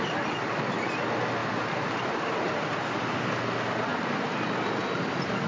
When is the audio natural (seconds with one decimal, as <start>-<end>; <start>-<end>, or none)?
0.0-3.9; 4.8-5.5